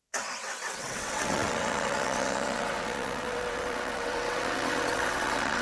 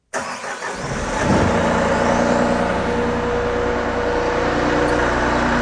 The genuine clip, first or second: second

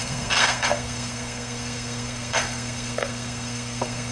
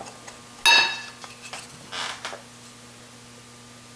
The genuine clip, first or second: second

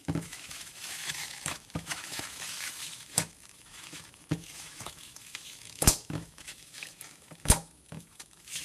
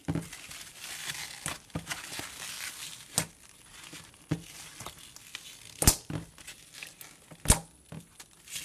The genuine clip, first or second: second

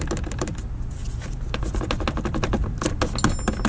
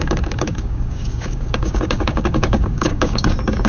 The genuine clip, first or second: first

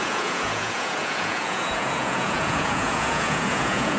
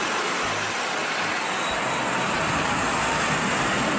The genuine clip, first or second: second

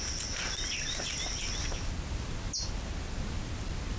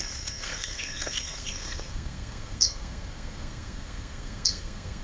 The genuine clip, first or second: first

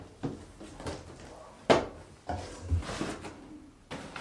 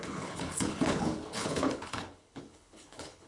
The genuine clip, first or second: first